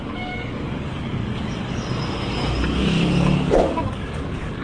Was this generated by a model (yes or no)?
yes